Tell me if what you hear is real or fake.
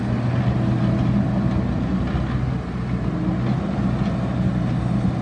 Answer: real